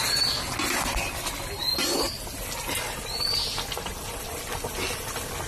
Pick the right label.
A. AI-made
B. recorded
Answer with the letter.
B